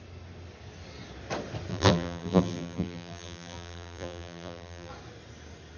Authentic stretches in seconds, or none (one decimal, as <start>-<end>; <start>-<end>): 0.0-1.7; 4.9-5.8